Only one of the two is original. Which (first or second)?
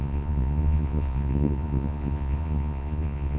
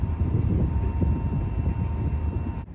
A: second